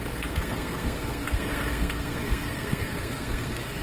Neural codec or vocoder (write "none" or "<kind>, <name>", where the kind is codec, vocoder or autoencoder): codec, SNAC